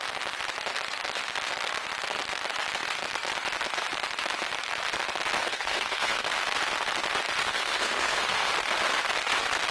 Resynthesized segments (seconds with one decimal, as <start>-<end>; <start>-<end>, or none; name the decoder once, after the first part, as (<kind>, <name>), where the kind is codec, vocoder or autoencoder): 5.4-6.3 (codec, SNAC); 7.4-8.5

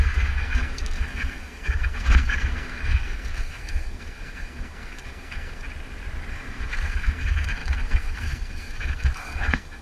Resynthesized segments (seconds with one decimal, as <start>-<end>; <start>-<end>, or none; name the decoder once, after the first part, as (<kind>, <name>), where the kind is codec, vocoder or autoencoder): 0.0-5.6 (codec, SNAC); 6.3-9.8

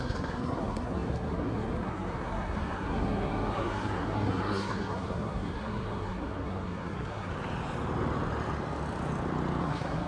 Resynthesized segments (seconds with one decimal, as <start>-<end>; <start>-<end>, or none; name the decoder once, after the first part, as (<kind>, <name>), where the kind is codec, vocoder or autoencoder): 0.0-7.3 (codec, SNAC); 9.6-10.1

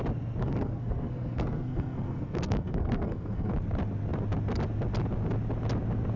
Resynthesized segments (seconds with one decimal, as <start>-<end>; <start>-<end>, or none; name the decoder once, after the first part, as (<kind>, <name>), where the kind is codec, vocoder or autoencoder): 0.4-3.5 (codec, SNAC)

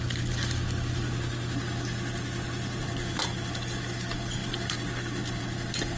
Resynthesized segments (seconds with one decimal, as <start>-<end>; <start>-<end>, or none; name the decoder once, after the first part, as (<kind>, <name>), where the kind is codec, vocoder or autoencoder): none

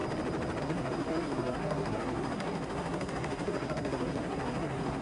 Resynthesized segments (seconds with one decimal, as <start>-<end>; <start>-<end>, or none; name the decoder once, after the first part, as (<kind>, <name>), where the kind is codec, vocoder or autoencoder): 0.6-5.0 (codec, SNAC)

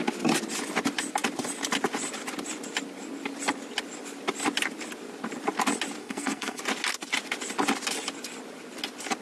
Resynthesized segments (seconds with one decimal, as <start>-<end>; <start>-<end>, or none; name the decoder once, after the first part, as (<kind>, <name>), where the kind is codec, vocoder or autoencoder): 6.0-6.6 (codec, SNAC)